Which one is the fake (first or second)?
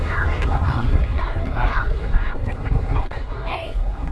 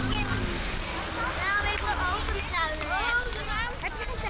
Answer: first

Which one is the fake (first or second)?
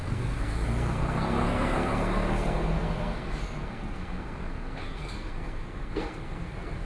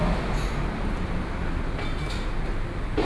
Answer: first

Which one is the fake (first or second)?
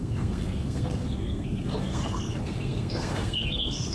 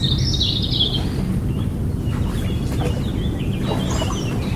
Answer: first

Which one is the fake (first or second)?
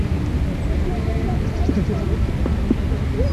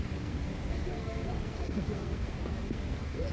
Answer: second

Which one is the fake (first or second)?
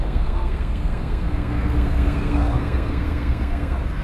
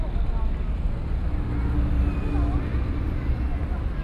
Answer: first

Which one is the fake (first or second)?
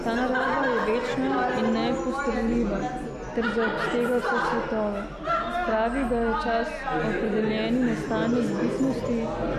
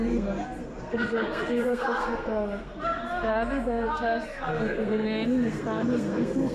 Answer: second